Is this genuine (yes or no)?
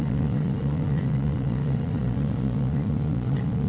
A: no